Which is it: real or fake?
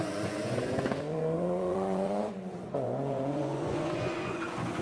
fake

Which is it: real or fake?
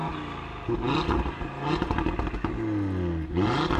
real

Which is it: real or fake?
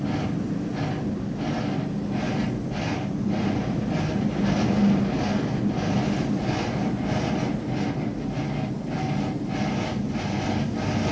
real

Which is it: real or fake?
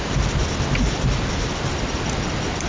real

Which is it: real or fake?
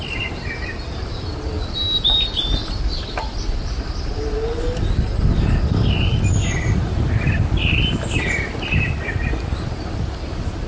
real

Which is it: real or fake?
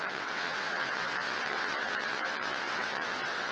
fake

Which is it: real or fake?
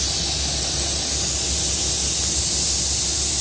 real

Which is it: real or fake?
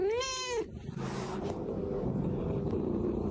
real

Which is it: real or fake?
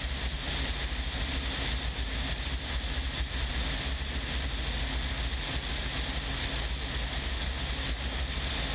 real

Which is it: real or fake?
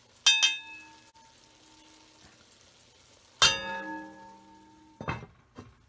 real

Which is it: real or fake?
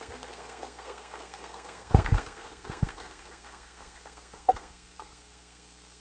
fake